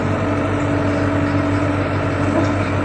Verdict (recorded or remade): recorded